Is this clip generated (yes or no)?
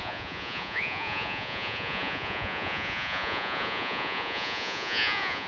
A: yes